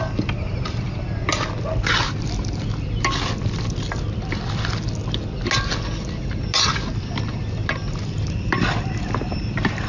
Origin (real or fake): real